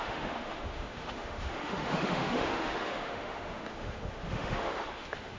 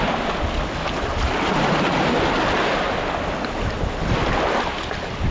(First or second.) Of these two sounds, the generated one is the first